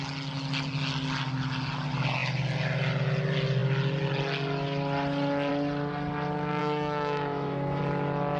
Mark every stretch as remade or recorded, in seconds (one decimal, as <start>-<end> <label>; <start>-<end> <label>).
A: 0.0-6.6 recorded; 6.6-7.8 remade; 7.8-8.4 recorded